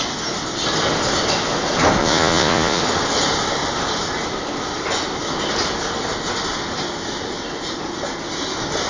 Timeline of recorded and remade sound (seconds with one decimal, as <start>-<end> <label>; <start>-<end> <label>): 0.0-2.0 recorded; 2.0-2.8 remade; 2.8-8.9 recorded